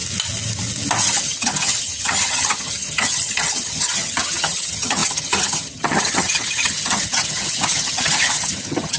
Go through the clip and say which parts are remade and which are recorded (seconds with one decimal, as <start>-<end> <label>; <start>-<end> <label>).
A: 0.0-1.2 recorded; 1.2-9.0 remade